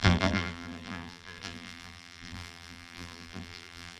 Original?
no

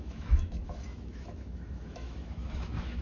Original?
no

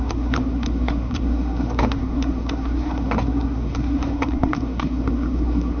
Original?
no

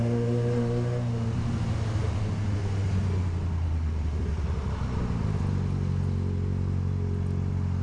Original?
yes